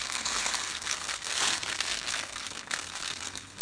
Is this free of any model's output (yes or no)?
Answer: no